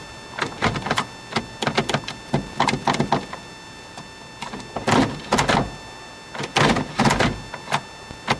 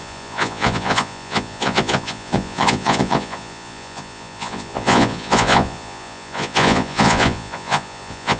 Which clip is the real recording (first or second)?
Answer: first